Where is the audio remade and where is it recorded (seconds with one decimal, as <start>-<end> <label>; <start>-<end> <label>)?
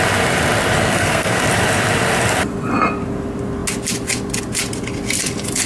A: 0.0-0.8 recorded; 0.8-1.4 remade; 1.4-5.7 recorded